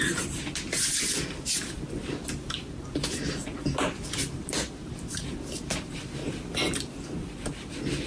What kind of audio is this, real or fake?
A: real